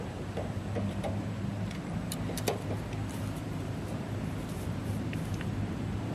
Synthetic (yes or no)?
yes